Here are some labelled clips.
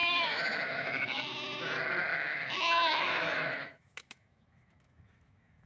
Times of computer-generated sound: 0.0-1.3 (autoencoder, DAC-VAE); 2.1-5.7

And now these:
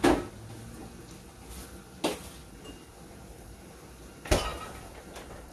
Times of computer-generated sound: none

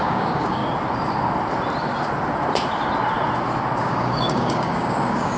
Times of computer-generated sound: 0.0-0.6 (codec, DAC); 3.8-5.4

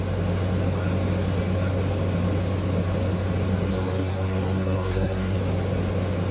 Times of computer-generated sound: 3.7-5.4 (codec, SNAC)

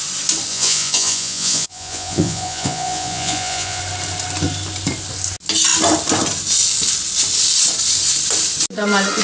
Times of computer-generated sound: 0.5-3.8 (vocoder, Vocos)

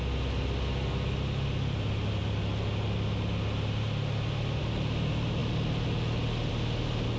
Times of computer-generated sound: none

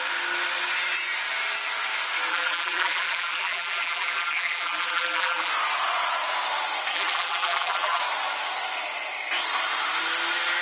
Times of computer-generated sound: 2.3-5.5 (vocoder, BigVGAN v2); 6.9-8.0